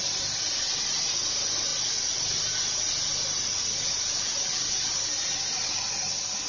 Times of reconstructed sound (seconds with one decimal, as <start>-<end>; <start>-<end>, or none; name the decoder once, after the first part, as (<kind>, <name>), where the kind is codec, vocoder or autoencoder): none